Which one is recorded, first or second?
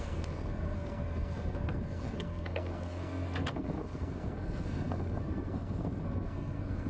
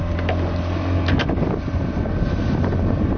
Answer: second